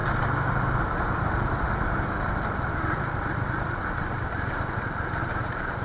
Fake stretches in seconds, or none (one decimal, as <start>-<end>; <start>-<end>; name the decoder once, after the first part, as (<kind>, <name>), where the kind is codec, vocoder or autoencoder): 0.0-1.9 (vocoder, BigVGAN v2); 2.7-4.2